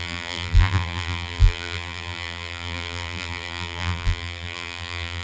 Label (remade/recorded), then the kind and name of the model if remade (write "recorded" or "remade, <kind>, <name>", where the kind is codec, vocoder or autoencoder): remade, vocoder, BigVGAN v2